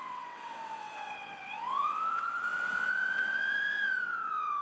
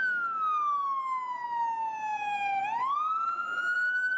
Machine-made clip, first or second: first